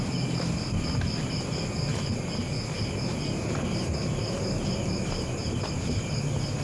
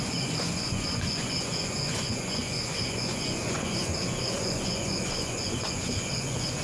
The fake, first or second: second